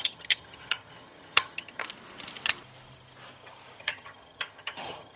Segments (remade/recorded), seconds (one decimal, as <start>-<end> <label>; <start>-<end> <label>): 0.0-1.8 remade; 1.8-3.8 recorded; 3.8-5.2 remade